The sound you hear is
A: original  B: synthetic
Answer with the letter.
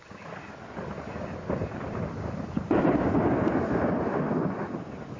A